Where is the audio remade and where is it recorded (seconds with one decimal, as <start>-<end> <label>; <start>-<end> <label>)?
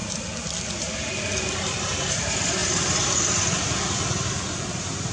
0.0-5.1 recorded